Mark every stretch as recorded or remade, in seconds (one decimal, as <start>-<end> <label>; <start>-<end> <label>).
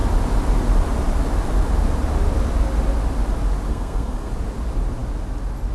0.0-3.7 recorded; 3.7-4.3 remade; 4.3-5.7 recorded